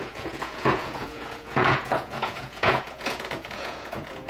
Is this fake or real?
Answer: fake